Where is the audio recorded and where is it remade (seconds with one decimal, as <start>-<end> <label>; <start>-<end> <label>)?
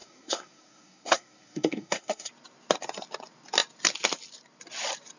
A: 0.0-2.3 remade; 2.3-5.2 recorded